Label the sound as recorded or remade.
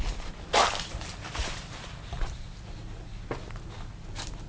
recorded